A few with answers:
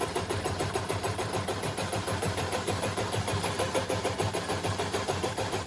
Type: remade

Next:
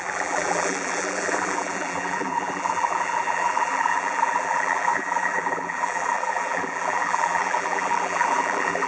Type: remade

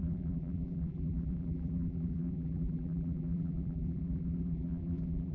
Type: remade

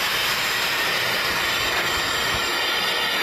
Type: recorded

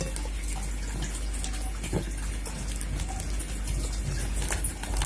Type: recorded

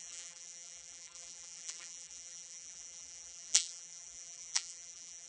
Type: remade